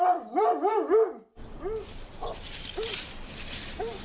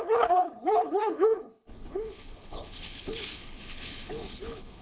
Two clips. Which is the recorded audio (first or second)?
first